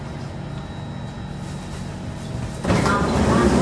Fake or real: real